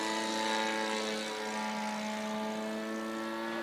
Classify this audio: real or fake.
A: real